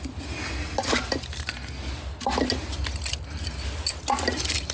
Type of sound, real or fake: real